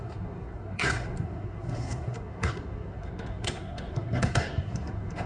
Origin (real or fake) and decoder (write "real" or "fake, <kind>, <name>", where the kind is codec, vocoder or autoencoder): fake, codec, SNAC